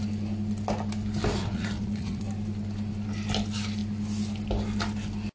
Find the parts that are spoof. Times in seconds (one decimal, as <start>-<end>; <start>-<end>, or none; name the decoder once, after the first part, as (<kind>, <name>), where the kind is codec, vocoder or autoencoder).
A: 1.3-2.2 (vocoder, Vocos)